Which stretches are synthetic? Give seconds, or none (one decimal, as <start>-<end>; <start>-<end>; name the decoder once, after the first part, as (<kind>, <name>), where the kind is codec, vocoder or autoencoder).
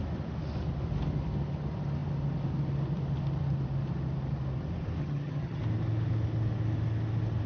5.0-5.6 (vocoder, HiFi-GAN)